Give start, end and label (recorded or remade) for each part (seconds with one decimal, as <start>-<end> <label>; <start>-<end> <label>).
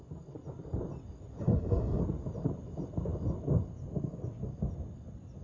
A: 0.0-1.4 recorded; 1.4-2.0 remade; 2.0-5.4 recorded